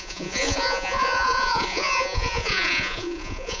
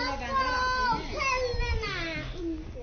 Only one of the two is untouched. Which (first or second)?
second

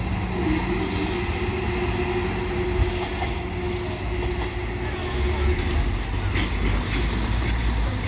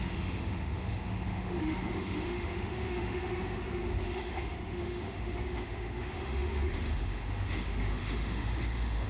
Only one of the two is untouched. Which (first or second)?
first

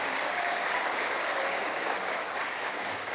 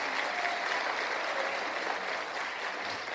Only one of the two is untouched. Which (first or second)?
second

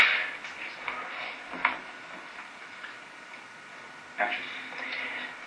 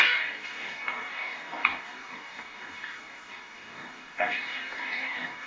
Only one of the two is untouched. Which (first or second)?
first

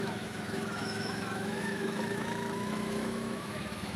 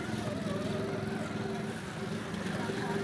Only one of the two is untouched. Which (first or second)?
second